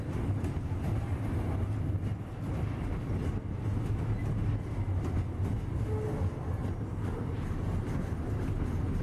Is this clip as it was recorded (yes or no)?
yes